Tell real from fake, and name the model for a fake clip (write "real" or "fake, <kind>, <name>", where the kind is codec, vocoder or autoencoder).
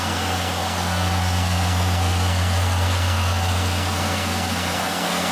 fake, codec, SNAC